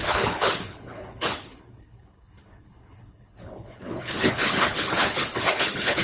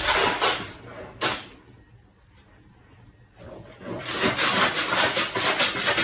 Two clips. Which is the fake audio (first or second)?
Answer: first